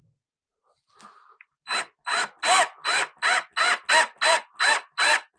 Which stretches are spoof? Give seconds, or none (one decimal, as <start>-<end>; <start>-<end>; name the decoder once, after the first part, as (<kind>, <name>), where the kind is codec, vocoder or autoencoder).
none